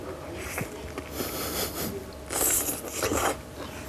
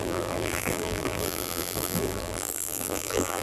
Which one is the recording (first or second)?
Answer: first